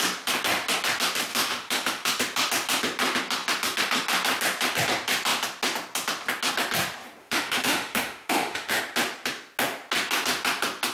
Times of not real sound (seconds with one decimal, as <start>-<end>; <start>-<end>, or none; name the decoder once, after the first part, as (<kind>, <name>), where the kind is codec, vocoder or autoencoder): 1.3-2.2 (autoencoder, DAC-VAE); 7.2-8.8